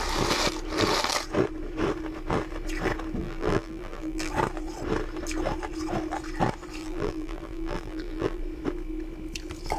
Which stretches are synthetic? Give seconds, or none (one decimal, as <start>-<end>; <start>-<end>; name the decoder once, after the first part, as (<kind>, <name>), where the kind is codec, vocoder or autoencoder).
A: 3.2-4.3 (vocoder, BigVGAN v2); 6.8-8.4